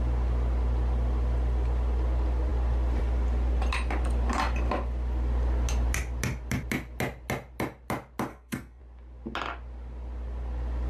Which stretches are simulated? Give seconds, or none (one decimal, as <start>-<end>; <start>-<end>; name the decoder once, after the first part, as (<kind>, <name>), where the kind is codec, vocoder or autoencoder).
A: 8.3-8.8 (codec, SNAC)